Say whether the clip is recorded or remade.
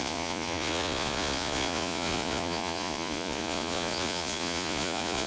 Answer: remade